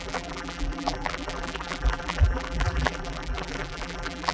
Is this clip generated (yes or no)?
yes